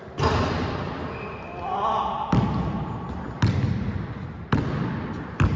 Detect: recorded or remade recorded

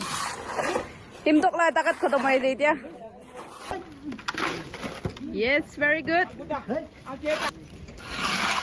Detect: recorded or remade recorded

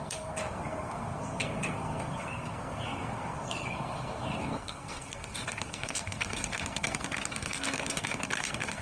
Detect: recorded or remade remade